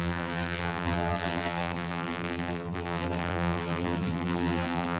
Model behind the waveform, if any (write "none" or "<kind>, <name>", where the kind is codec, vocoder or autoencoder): vocoder, BigVGAN v2